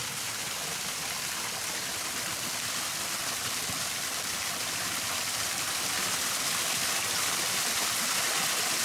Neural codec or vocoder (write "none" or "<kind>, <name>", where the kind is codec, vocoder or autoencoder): none